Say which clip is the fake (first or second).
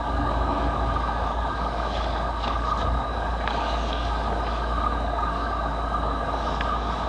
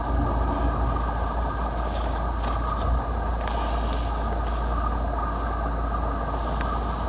first